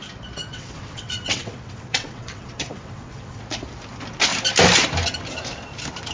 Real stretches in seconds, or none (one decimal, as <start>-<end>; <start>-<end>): 0.0-0.5; 3.4-6.1